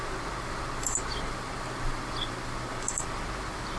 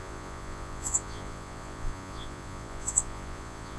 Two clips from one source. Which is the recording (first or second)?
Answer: first